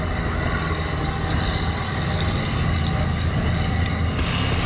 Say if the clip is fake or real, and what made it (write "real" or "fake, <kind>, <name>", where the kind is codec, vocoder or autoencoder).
real